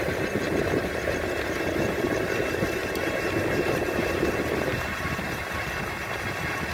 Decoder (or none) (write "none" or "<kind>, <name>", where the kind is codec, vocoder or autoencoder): vocoder, BigVGAN v2